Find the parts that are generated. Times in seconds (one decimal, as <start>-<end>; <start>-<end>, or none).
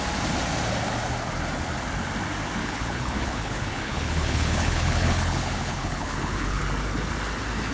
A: 2.6-6.6